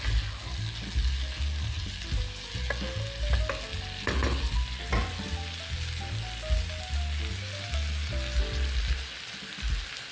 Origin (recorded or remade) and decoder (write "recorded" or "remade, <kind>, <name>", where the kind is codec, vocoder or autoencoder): recorded